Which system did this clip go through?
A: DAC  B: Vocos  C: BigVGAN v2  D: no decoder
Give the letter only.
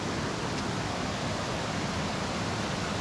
D